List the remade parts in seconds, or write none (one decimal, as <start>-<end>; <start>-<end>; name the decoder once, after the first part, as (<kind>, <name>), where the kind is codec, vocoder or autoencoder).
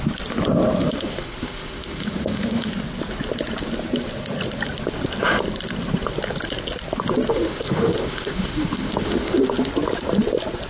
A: 0.8-2.7 (autoencoder, DAC-VAE); 7.3-9.4